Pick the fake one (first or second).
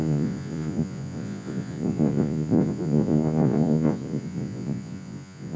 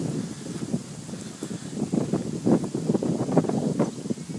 first